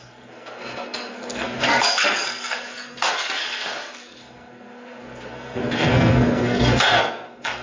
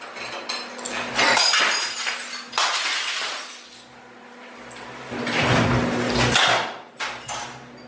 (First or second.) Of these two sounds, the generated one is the first